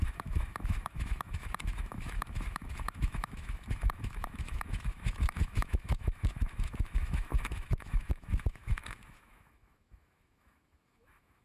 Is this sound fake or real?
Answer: fake